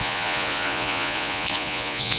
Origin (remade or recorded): remade